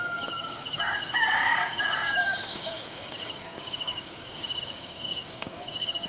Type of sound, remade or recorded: remade